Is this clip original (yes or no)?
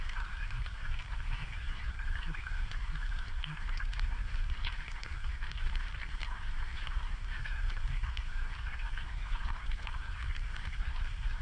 no